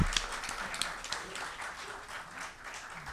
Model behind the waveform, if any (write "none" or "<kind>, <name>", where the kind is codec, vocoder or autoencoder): none